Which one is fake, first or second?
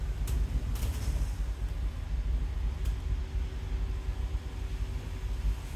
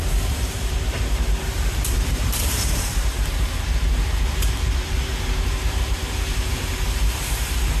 second